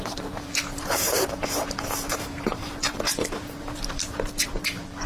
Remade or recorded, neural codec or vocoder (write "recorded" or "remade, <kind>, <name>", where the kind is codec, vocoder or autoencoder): remade, vocoder, BigVGAN v2